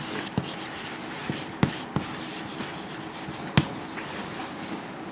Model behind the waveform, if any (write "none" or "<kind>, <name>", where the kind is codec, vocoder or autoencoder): none